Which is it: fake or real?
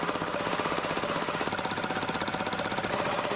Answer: real